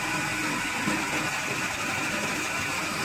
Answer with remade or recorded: recorded